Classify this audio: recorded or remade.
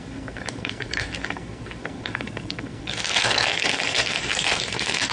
remade